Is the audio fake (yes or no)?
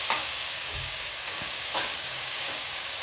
yes